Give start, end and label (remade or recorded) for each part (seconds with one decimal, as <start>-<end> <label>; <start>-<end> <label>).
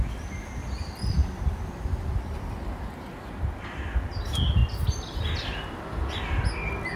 0.0-1.2 recorded; 1.2-2.4 remade; 2.4-7.0 recorded